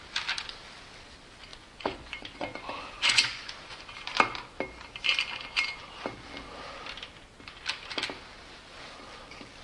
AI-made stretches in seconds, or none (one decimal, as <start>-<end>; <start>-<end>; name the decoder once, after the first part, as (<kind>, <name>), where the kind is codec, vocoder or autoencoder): 1.5-3.8 (vocoder, Vocos)